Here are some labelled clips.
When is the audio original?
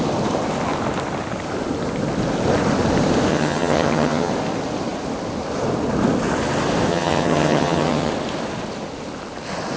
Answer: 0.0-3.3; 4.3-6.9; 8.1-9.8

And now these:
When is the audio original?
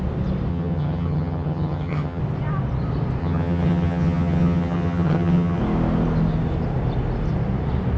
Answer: 0.0-0.5; 2.2-3.2; 5.6-8.0